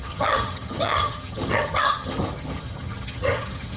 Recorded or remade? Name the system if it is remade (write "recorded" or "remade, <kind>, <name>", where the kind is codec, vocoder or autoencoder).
remade, vocoder, HiFi-GAN